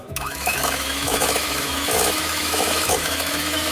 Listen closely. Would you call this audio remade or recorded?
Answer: remade